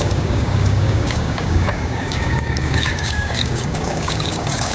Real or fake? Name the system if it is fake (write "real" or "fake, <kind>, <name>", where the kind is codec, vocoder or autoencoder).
fake, codec, DAC